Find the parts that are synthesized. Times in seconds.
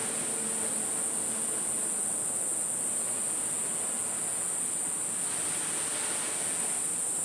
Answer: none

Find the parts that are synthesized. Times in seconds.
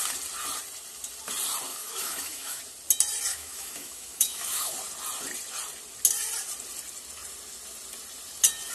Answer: 1.7-2.6 (autoencoder, DAC-VAE); 3.3-4.7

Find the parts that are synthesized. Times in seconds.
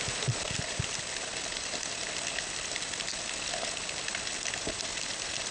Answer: none